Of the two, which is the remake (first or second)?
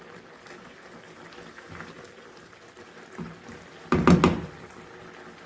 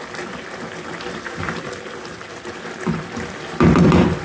second